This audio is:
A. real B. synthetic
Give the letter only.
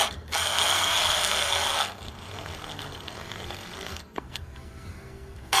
B